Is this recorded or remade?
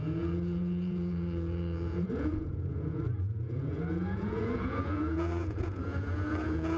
remade